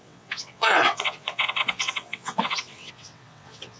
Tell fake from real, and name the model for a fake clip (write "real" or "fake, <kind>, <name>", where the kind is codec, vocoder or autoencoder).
fake, vocoder, WaveNeXt